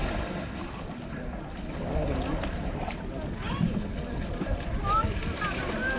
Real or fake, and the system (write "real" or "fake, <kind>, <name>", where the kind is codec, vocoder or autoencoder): real